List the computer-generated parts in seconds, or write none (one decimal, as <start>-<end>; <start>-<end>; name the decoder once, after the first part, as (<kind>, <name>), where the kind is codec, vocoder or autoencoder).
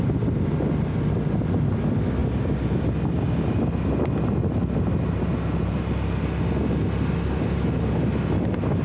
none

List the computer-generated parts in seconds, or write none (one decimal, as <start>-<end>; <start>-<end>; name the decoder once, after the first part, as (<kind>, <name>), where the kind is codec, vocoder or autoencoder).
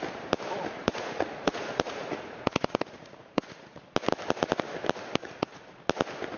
0.8-3.8 (vocoder, Vocos); 5.2-5.8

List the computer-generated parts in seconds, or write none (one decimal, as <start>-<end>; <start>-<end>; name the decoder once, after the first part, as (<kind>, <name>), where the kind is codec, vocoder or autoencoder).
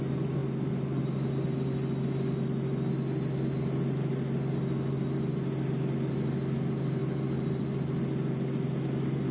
none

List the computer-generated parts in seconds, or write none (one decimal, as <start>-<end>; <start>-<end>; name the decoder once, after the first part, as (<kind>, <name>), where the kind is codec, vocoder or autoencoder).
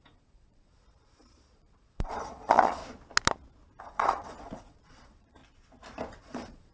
0.0-2.8 (vocoder, Vocos); 3.8-5.4; 6.2-6.7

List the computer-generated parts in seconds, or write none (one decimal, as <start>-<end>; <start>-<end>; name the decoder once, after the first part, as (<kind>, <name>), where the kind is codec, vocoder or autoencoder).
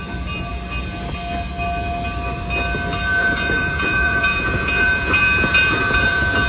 3.2-6.5 (vocoder, Vocos)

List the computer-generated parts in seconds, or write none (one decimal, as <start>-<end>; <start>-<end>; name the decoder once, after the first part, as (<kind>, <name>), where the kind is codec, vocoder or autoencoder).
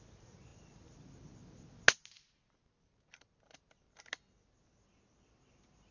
none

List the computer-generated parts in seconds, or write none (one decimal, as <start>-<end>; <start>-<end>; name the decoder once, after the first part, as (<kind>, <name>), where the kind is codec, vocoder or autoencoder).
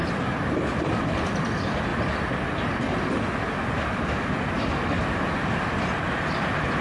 none